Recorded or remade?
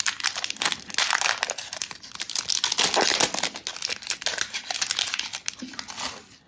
recorded